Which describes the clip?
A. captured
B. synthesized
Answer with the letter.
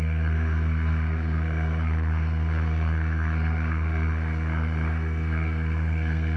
B